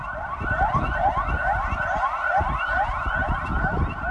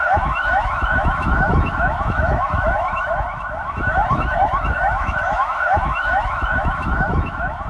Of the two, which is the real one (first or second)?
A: first